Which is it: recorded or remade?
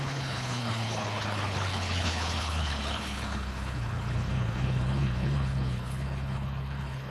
remade